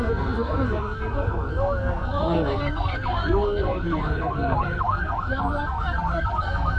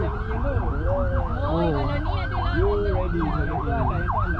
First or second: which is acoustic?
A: second